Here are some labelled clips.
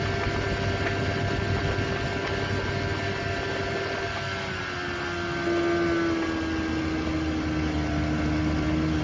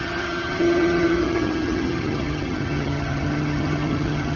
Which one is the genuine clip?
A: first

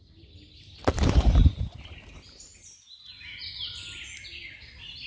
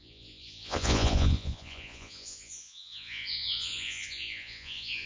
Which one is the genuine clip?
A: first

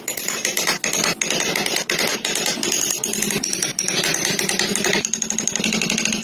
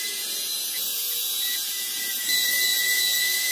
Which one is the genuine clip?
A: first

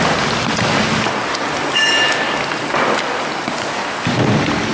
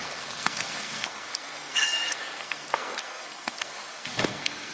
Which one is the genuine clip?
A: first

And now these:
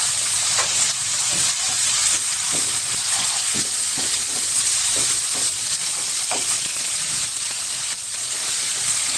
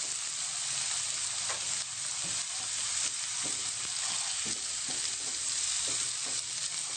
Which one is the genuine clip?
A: second